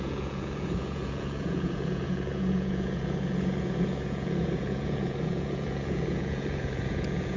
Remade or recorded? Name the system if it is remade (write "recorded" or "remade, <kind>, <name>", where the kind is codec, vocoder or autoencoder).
remade, vocoder, Vocos